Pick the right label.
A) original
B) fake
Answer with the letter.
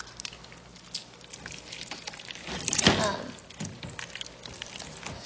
A